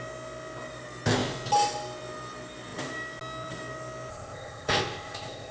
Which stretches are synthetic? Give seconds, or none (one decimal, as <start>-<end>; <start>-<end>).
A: 4.1-5.5